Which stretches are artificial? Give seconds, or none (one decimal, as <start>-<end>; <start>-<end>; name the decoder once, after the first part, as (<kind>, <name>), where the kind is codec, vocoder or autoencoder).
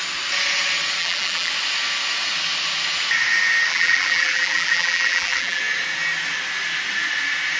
1.0-1.5 (vocoder, BigVGAN v2); 3.7-5.6